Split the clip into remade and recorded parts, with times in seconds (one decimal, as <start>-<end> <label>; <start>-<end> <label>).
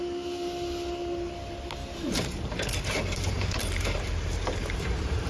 0.0-1.8 recorded; 1.8-5.3 remade